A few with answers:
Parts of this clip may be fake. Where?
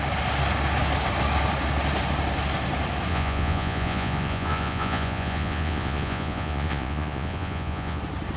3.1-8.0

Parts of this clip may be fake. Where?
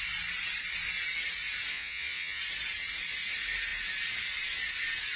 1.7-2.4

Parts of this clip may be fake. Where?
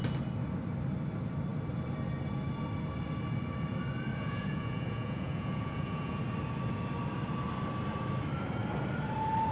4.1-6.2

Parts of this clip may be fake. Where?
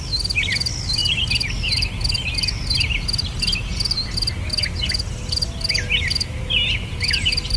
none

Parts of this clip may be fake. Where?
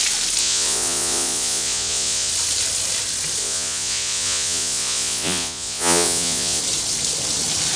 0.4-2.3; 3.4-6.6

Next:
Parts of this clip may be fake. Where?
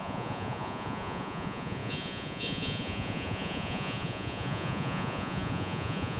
0.0-6.2